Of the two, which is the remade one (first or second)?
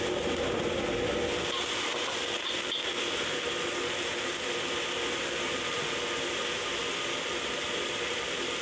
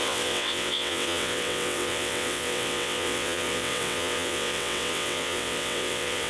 second